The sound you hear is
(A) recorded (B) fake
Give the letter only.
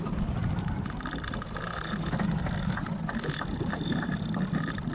A